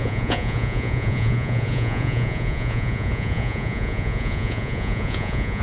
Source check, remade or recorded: remade